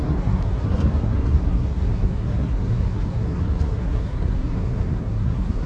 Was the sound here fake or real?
fake